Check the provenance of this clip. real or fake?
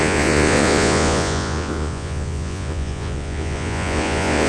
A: fake